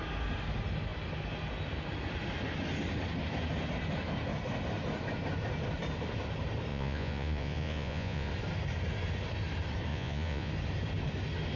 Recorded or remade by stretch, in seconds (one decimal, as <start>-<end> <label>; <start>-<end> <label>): 0.0-6.7 recorded; 6.7-8.3 remade; 8.3-9.9 recorded; 9.9-10.5 remade; 10.5-11.6 recorded